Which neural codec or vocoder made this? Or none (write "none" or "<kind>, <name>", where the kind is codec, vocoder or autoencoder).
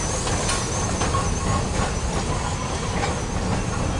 none